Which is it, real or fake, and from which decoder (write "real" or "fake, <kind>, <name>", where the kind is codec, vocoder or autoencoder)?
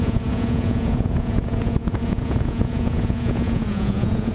fake, vocoder, Vocos